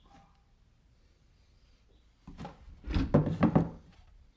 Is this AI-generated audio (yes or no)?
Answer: no